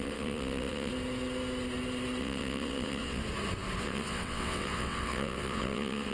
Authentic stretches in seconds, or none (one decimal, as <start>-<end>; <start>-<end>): 0.9-2.2; 3.2-3.8